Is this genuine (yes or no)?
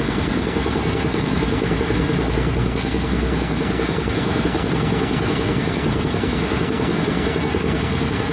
no